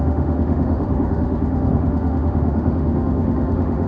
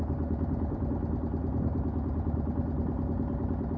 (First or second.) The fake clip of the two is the first